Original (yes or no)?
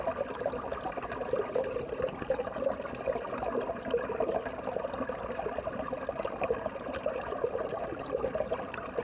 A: yes